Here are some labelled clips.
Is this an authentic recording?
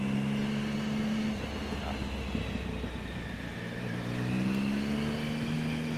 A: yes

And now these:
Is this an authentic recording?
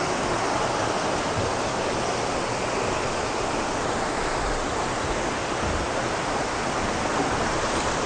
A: yes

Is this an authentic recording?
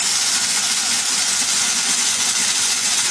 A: no